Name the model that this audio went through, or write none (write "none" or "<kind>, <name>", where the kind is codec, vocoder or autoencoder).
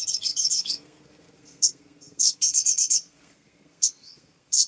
codec, SNAC